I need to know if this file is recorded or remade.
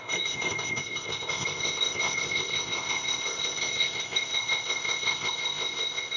remade